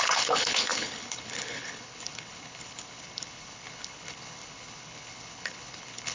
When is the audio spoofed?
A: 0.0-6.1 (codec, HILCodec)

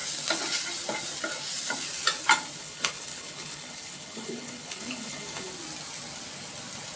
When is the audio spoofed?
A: 2.6-5.5 (codec, HILCodec)

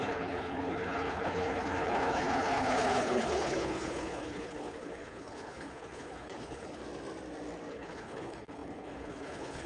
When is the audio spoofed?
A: 0.0-6.8 (codec, HILCodec); 7.7-9.7

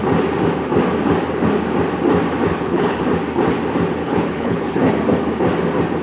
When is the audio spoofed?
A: 2.5-3.0 (codec, HILCodec); 4.0-4.9